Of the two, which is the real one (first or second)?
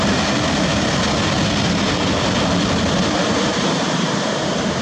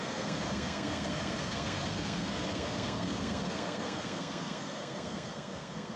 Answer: first